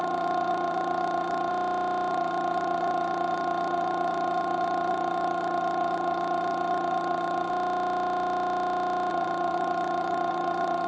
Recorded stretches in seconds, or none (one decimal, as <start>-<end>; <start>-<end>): 1.5-2.1; 7.5-9.1